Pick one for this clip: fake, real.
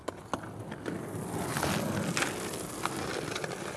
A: real